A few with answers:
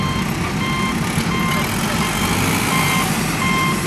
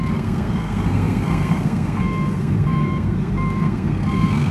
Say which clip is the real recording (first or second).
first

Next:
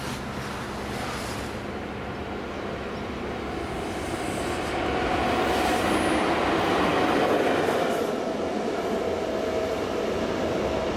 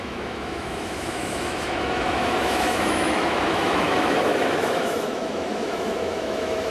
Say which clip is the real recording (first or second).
first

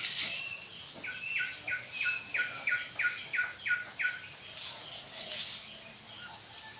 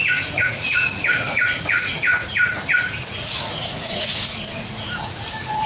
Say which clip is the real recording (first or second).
first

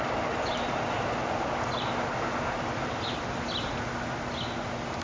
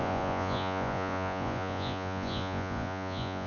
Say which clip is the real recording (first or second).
first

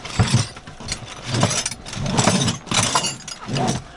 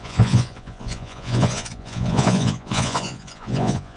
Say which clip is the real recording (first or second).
first